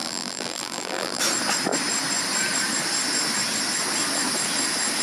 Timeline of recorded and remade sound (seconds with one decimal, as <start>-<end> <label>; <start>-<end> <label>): 0.0-1.2 remade; 1.2-5.0 recorded